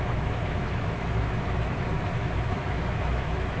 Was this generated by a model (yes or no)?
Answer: yes